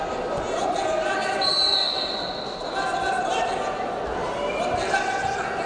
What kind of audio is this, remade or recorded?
recorded